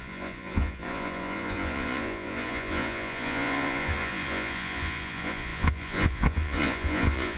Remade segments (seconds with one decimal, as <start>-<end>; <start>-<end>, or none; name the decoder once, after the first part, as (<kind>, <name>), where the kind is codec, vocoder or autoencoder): 0.0-7.4 (vocoder, Vocos)